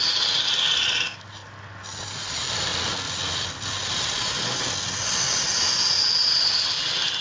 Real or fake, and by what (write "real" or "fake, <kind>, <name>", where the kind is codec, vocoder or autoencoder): real